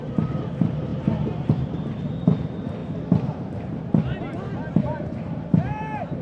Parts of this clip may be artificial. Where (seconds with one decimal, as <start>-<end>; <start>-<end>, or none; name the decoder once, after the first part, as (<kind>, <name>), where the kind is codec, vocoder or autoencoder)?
0.0-2.8 (vocoder, BigVGAN v2); 4.8-6.2